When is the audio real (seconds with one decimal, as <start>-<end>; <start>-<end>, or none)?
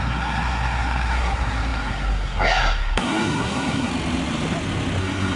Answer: 3.9-5.0